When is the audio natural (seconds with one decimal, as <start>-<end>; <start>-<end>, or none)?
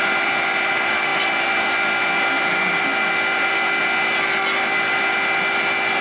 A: 0.0-6.0